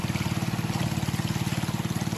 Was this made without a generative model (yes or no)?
yes